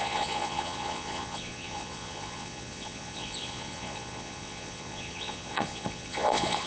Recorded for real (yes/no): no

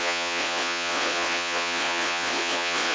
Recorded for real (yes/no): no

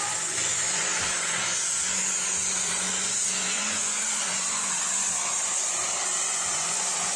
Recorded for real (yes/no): no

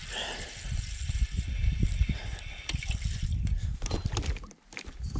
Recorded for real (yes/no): yes